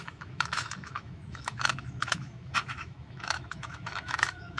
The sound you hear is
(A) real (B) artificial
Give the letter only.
B